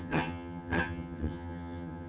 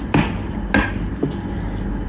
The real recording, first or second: second